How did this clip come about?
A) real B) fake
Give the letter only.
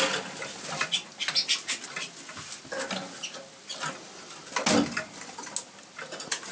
A